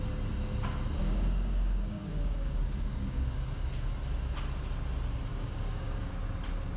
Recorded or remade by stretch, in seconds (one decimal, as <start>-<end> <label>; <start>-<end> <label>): 0.0-1.0 recorded; 1.0-3.9 remade; 3.9-5.3 recorded; 5.3-6.1 remade; 6.1-6.8 recorded